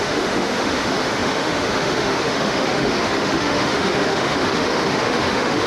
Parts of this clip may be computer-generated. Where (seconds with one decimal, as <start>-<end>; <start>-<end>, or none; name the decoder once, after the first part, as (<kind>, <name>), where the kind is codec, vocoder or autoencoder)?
0.0-5.7 (autoencoder, DAC-VAE)